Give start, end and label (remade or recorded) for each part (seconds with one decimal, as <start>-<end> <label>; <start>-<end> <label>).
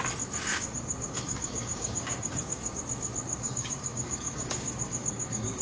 0.0-0.5 recorded; 0.5-2.8 remade; 2.8-3.3 recorded; 3.3-5.6 remade